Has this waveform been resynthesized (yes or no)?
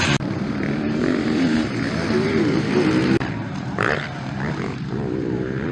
yes